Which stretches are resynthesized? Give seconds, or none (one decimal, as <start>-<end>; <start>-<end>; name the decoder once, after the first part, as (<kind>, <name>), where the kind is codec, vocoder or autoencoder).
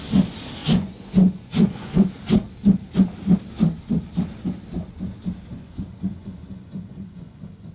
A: 0.6-2.1 (vocoder, Vocos); 5.5-7.7